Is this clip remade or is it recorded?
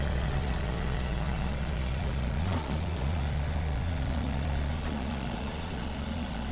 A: remade